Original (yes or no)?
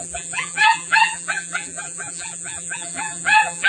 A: no